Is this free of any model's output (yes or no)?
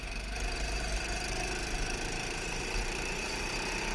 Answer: no